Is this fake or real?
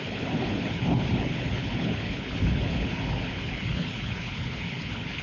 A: fake